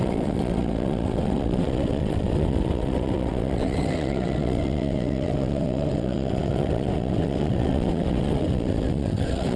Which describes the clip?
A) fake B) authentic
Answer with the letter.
A